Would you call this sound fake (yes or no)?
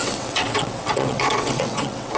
yes